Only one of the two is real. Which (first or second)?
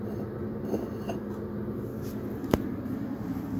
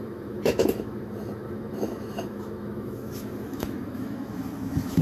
first